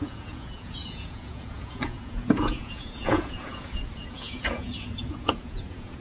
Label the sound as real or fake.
fake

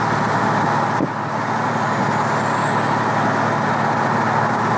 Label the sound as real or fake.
real